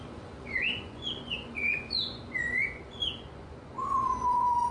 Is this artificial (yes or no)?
yes